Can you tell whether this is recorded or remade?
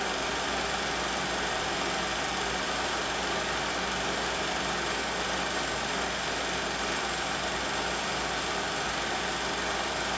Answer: recorded